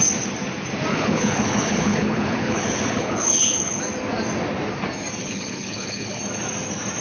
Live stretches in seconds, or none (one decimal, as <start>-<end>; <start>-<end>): 0.0-0.9; 3.8-5.2; 6.2-7.0